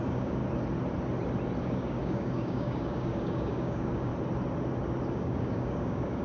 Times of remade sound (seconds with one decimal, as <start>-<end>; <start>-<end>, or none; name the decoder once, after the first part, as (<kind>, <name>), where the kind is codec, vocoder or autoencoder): 0.0-0.4 (codec, DAC); 1.6-4.1; 5.1-6.2